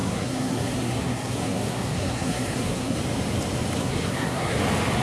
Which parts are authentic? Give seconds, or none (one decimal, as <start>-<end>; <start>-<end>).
3.0-3.8; 4.6-5.0